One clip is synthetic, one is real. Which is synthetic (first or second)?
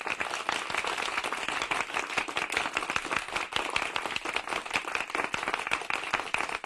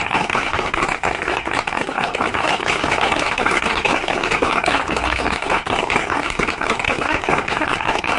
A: second